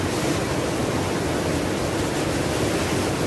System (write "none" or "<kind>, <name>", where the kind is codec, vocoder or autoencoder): none